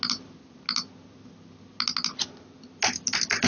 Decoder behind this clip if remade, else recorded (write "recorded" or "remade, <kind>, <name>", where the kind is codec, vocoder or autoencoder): recorded